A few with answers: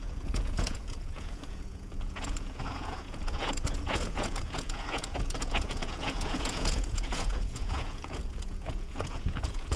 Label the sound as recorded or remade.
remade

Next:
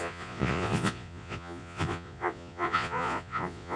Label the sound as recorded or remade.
remade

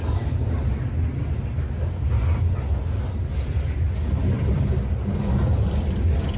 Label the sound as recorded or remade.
recorded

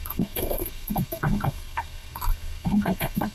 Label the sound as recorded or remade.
remade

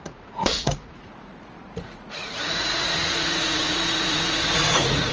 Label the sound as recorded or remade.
remade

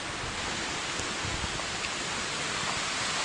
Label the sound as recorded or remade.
recorded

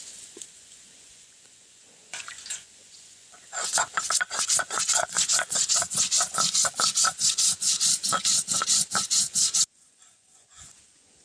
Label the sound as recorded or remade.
remade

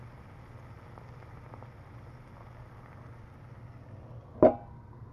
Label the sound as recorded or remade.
recorded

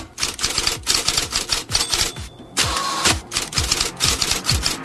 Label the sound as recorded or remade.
recorded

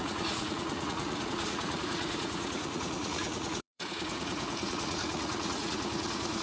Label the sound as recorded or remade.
remade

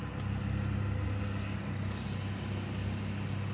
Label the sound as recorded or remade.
recorded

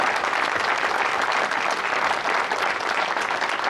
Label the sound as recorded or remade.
recorded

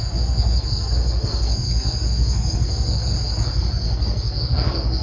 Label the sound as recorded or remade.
remade